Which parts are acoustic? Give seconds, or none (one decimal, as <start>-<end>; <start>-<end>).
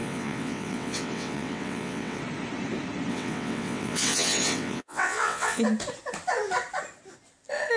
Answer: 2.2-3.1; 5.6-7.8